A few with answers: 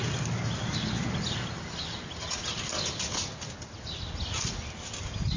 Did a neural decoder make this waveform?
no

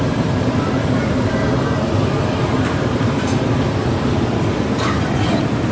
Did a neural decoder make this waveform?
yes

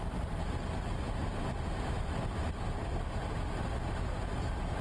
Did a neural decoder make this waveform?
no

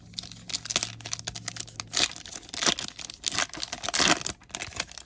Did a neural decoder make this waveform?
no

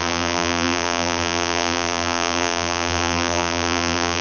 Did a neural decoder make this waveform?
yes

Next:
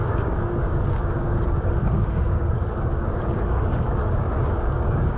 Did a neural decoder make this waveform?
yes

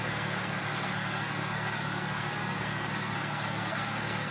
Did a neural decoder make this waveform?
yes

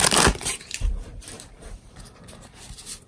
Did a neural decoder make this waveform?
yes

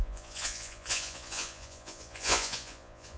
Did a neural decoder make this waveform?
yes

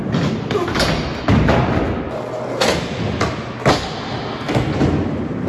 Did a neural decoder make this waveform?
no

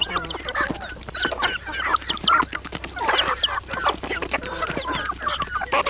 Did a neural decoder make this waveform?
no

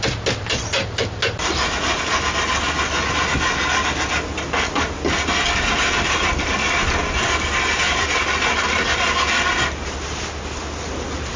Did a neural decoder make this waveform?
no